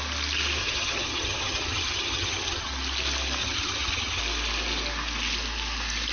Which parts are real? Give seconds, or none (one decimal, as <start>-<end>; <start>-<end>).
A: 0.0-0.6; 2.7-3.4; 4.2-6.1